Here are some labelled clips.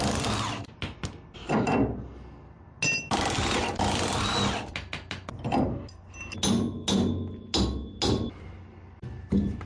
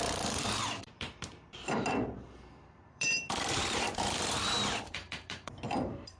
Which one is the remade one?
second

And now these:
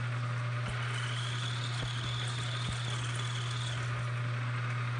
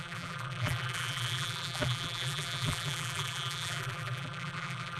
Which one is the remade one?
second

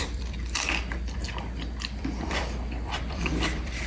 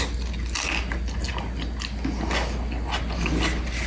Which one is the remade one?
first